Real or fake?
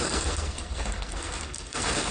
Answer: fake